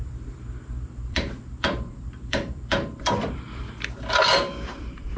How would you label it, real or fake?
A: fake